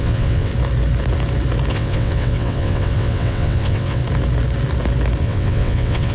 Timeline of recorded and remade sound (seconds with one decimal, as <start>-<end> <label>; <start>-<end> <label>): 0.0-0.5 remade; 0.5-1.7 recorded; 1.7-4.0 remade; 4.0-5.2 recorded; 5.2-6.1 remade